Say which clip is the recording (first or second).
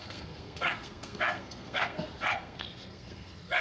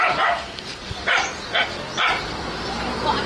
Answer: second